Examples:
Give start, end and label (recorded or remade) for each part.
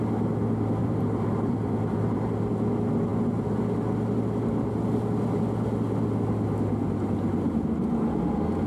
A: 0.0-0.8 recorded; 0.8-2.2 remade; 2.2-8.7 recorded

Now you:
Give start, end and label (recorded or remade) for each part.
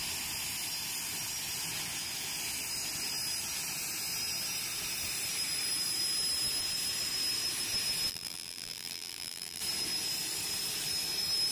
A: 0.0-8.1 recorded; 8.1-9.6 remade; 9.6-11.5 recorded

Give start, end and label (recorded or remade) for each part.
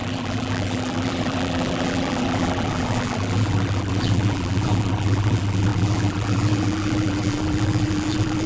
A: 0.0-8.5 remade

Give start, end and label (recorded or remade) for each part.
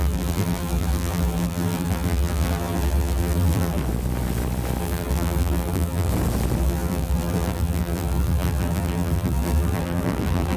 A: 0.0-3.8 remade; 3.8-4.8 recorded; 4.8-6.1 remade; 6.1-6.6 recorded; 6.6-10.6 remade